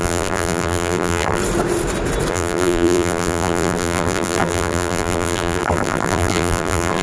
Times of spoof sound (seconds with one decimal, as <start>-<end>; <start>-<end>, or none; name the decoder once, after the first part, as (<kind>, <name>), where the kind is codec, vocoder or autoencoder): 0.0-1.4 (vocoder, BigVGAN v2); 2.3-7.0